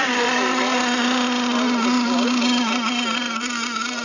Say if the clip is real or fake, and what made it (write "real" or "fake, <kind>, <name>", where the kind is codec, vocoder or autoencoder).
real